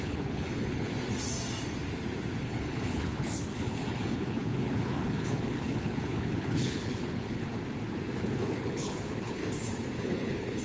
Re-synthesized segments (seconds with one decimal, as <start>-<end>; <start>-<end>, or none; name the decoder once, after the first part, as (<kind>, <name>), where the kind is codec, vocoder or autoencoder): 0.0-0.9 (codec, HILCodec); 2.4-7.5; 8.2-9.4; 10.0-10.6